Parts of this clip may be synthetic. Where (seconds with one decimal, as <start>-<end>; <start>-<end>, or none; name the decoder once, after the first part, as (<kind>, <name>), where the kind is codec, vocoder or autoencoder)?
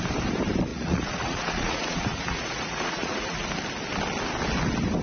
0.7-3.5 (vocoder, Vocos)